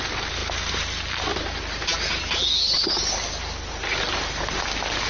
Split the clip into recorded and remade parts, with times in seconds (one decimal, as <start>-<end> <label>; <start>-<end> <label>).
0.0-5.1 recorded